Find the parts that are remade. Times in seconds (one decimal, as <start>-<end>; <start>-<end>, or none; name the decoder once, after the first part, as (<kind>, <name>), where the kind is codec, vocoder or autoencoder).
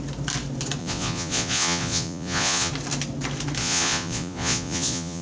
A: 0.8-2.7 (vocoder, Vocos); 3.6-5.2